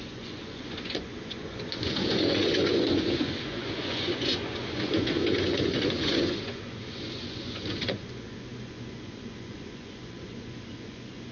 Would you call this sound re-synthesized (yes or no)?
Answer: yes